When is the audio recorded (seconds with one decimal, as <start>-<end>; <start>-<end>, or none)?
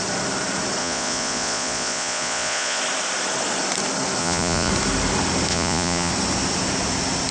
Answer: 0.0-0.8; 2.8-4.2; 4.7-5.5; 6.1-7.3